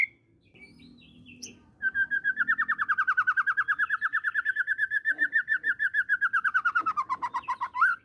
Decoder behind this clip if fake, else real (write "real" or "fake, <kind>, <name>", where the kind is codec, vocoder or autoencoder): fake, vocoder, BigVGAN v2